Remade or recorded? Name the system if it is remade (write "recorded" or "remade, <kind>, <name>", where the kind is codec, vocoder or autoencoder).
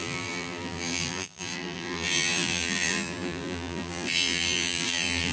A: remade, vocoder, BigVGAN v2